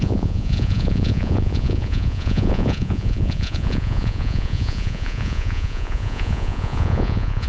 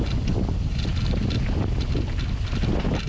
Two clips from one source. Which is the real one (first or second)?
second